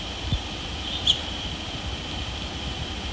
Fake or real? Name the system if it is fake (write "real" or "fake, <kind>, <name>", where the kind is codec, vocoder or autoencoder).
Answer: real